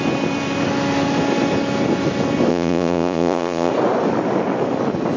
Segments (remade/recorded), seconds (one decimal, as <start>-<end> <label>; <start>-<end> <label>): 0.0-2.5 recorded; 2.5-3.7 remade; 3.7-5.2 recorded